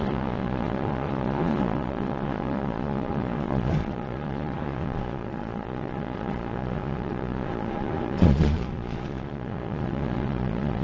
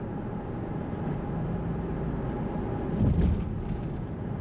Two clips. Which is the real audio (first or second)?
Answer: second